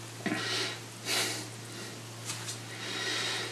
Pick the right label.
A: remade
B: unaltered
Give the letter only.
B